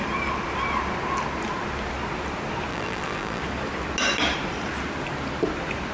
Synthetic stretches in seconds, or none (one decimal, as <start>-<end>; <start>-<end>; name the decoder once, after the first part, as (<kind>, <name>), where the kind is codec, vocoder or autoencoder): 2.7-3.4 (vocoder, BigVGAN v2)